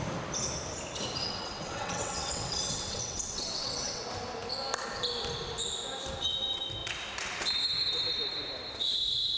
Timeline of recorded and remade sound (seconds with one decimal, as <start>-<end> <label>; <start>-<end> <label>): 0.0-1.2 recorded; 1.2-4.0 remade; 4.0-9.4 recorded